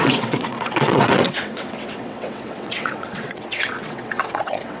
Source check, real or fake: fake